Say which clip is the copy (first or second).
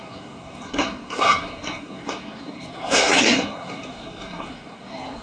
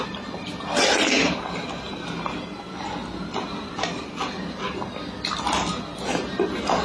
first